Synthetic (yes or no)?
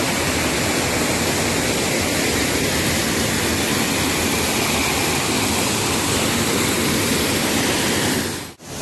no